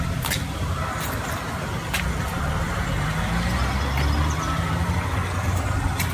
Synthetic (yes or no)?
no